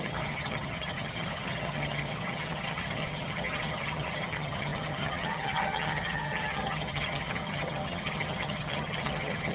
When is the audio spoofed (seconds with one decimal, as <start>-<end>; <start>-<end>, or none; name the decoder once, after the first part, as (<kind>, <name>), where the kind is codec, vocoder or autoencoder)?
0.0-9.5 (vocoder, HiFi-GAN)